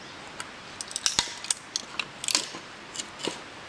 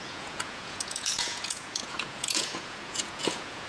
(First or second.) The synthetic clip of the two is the second